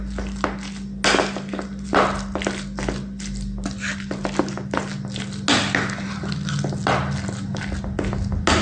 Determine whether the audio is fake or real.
real